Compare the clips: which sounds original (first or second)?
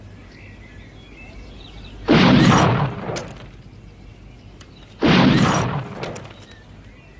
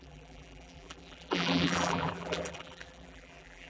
first